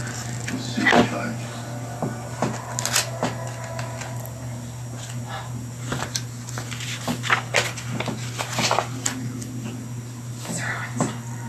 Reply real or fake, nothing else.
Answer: real